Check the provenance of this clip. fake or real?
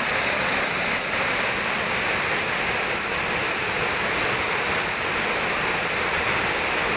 real